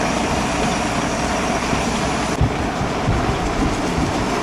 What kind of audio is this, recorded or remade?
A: recorded